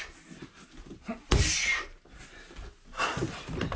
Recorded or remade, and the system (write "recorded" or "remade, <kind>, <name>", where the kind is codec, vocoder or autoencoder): recorded